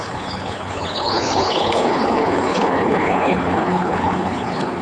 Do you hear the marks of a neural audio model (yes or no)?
yes